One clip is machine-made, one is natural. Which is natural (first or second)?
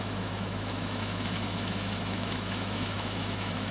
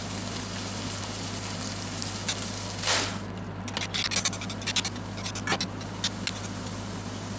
second